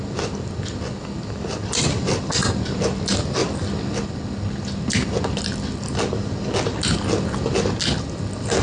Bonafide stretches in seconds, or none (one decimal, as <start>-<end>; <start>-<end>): 0.0-8.6